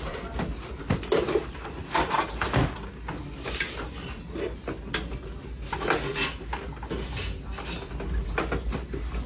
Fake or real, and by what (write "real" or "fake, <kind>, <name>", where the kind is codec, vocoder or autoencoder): real